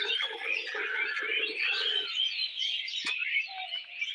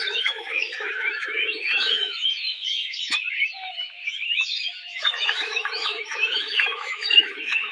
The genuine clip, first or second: first